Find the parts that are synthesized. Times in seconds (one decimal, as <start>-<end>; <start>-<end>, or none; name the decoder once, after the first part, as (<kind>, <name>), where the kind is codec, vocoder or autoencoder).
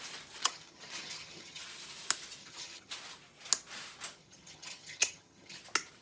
0.4-1.6 (vocoder, HiFi-GAN); 2.4-2.9; 4.2-5.6